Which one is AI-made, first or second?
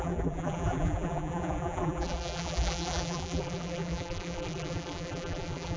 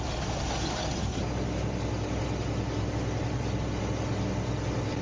first